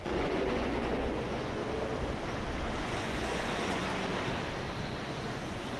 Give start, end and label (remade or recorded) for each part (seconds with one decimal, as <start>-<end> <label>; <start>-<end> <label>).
0.0-1.6 remade; 1.6-2.8 recorded; 2.8-3.8 remade; 3.8-4.8 recorded; 4.8-5.8 remade